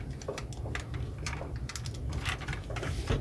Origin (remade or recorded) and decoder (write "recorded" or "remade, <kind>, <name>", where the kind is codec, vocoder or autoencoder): recorded